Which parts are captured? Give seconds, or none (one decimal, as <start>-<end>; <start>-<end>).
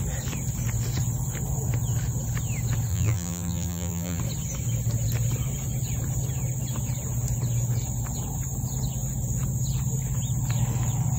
0.0-2.9; 4.2-11.2